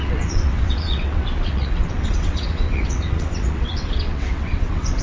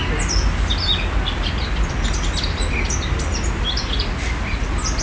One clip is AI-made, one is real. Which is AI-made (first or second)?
first